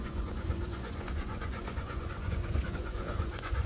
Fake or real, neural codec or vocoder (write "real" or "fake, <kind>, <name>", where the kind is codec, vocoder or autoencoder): fake, vocoder, Vocos